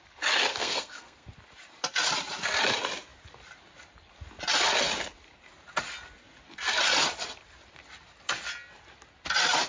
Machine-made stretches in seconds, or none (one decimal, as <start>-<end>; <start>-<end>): 0.5-1.3